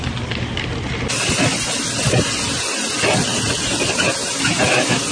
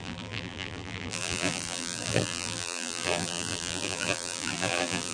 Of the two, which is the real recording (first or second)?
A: first